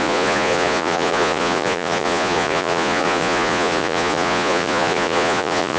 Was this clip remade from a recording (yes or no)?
yes